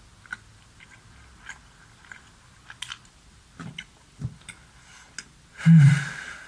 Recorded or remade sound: recorded